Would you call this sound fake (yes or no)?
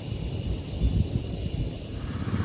no